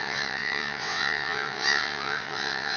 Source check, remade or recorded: remade